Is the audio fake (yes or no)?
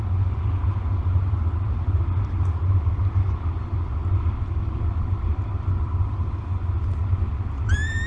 yes